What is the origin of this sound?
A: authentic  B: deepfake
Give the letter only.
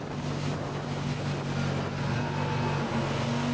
A